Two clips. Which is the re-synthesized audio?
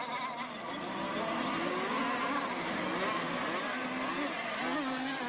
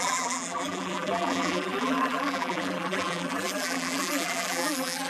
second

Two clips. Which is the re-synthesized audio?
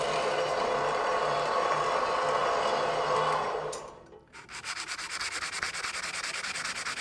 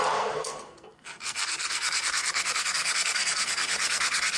second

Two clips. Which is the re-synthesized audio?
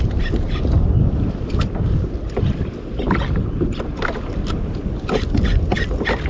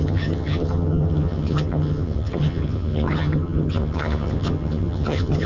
second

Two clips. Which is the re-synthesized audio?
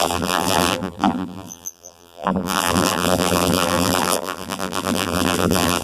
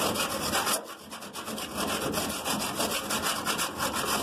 first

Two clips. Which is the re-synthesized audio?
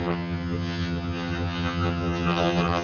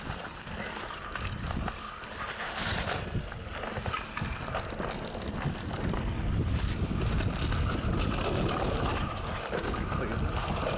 first